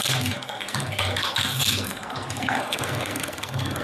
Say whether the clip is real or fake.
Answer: fake